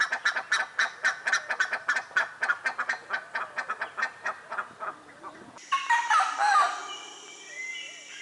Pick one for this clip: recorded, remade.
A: recorded